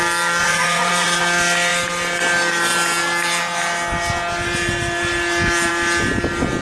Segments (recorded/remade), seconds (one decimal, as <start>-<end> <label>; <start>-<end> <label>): 0.0-0.4 recorded; 0.4-1.2 remade; 1.2-6.6 recorded